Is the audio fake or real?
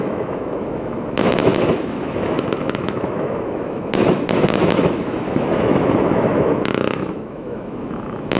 fake